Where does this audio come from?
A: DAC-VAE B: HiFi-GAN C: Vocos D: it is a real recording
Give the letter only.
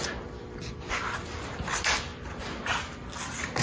D